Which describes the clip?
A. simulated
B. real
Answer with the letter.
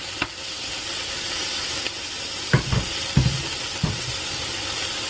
B